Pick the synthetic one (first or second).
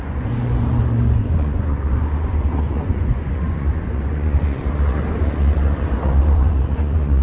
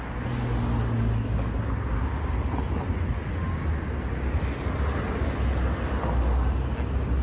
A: first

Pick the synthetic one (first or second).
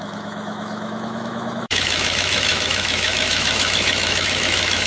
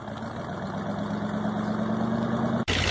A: first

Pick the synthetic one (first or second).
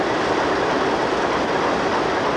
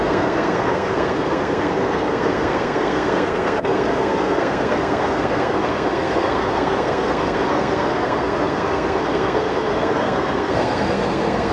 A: second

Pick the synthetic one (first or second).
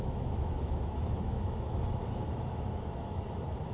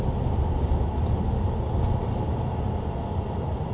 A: first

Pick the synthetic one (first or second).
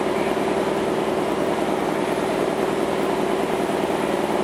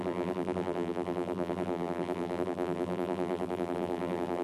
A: second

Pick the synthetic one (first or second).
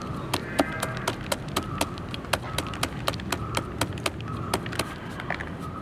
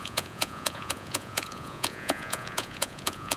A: second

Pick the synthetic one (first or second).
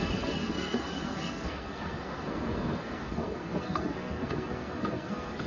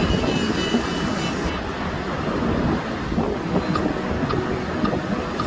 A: first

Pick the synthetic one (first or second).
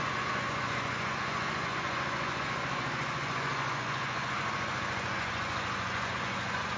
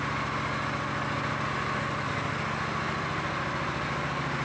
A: first